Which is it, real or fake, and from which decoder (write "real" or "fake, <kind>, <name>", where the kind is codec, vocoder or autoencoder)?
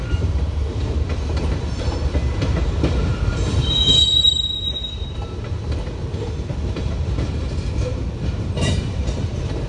fake, vocoder, BigVGAN v2